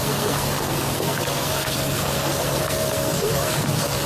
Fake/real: fake